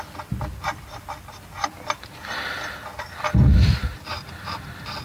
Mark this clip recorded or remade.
recorded